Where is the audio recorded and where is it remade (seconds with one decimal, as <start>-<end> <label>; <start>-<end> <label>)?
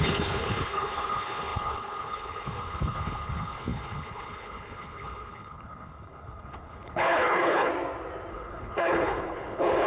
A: 0.0-7.7 remade; 7.7-8.3 recorded; 8.3-9.9 remade